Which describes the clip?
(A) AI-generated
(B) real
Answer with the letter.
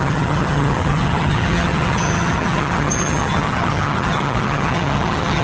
A